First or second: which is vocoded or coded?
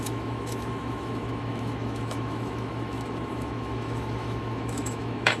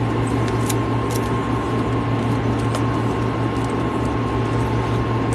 first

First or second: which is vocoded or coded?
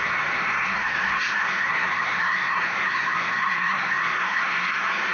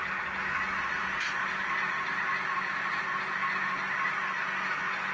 first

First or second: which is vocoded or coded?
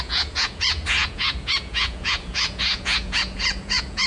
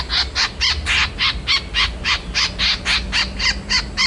first